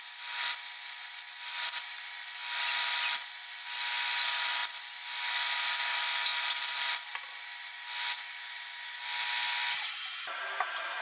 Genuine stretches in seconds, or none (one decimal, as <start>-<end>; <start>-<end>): 0.0-11.0